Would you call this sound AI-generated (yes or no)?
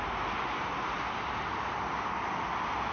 no